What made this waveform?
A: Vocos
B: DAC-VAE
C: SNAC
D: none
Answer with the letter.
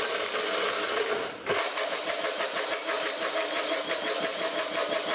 D